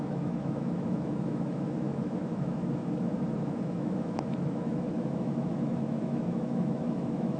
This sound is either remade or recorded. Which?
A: remade